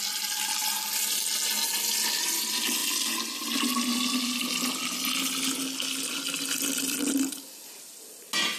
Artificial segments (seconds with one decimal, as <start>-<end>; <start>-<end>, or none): none